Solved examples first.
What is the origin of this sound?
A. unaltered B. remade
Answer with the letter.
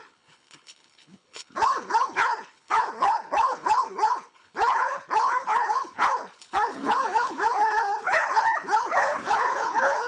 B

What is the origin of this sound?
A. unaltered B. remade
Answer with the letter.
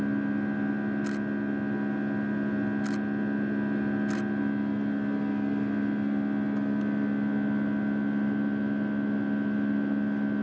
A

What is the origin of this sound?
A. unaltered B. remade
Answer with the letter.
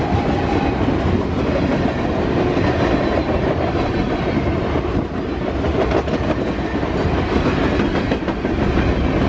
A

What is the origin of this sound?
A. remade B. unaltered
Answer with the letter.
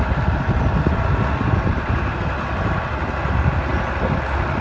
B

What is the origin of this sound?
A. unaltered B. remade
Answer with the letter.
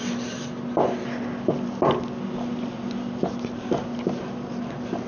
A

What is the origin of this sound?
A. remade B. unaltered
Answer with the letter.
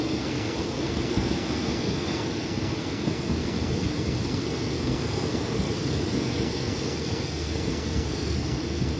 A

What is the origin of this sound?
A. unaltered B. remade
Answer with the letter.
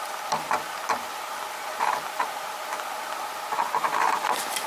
A